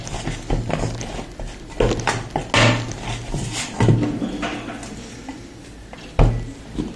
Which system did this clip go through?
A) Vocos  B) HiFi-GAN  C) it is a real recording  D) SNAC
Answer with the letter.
C